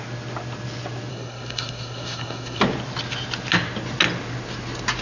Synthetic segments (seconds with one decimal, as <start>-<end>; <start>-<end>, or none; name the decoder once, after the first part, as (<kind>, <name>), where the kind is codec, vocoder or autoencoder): 1.1-2.6 (codec, SNAC)